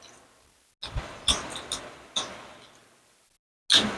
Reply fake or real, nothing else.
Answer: real